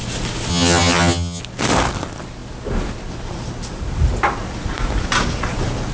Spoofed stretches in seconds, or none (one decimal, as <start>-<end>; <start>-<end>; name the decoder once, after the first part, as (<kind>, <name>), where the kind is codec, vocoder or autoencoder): 0.5-1.4 (vocoder, HiFi-GAN)